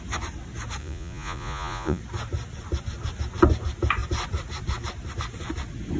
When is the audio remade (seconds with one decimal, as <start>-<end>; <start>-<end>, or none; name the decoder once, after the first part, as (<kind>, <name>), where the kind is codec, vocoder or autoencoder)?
0.8-2.0 (vocoder, Vocos)